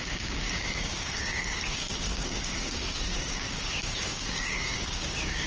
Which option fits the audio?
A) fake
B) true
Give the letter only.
A